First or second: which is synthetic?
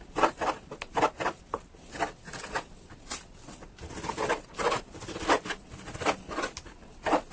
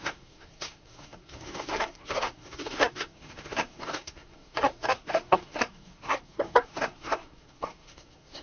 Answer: second